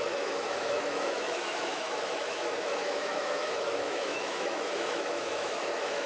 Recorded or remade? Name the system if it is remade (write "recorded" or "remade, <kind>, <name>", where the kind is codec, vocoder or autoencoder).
remade, autoencoder, DAC-VAE